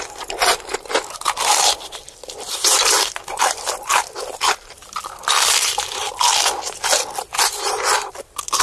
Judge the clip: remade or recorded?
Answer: remade